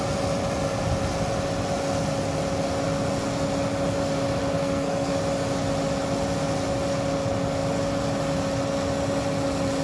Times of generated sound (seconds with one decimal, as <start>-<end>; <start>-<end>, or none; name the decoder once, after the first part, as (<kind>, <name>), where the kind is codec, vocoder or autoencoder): 4.6-5.2 (codec, SNAC)